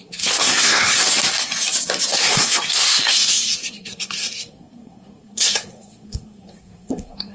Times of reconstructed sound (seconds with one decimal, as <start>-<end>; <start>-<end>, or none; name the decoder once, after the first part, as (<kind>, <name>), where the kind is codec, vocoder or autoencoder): 0.0-1.0 (codec, SNAC); 2.1-7.3